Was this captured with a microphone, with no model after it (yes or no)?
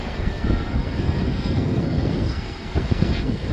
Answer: no